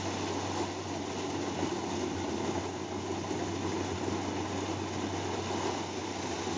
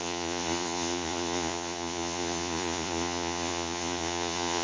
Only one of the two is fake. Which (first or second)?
second